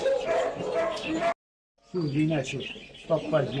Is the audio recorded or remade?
recorded